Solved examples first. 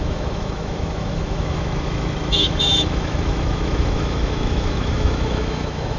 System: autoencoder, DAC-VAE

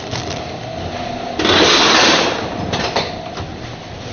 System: none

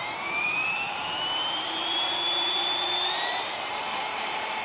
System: vocoder, BigVGAN v2